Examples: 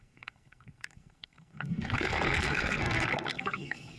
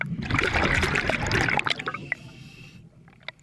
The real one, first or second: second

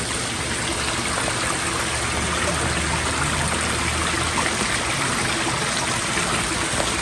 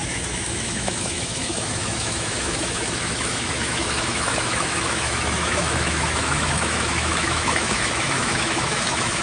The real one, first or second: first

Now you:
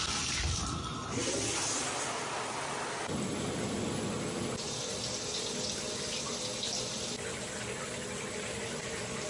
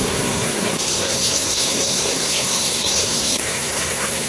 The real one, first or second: first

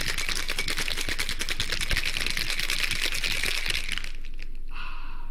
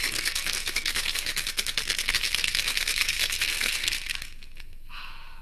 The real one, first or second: first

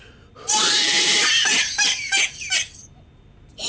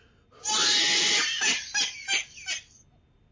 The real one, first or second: second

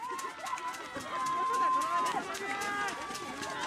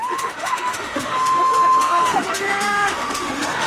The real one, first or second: first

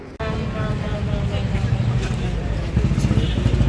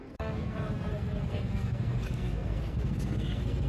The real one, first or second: first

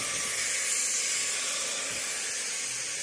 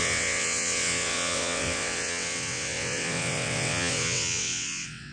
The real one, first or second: first